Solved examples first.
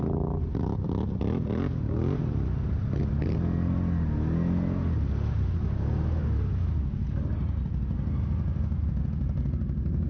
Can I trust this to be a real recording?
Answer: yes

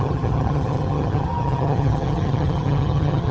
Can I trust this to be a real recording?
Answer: no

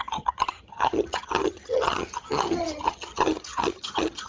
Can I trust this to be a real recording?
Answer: no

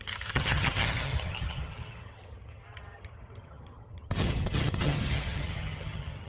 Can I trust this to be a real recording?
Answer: no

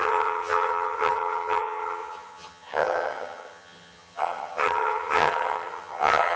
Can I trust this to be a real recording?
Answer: no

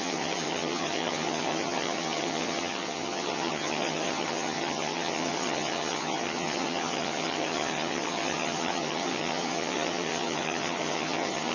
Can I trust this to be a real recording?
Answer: no